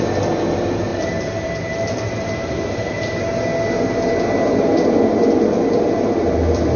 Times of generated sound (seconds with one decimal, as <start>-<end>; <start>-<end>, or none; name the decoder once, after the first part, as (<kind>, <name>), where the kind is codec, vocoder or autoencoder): 0.9-2.3 (vocoder, BigVGAN v2); 5.1-6.8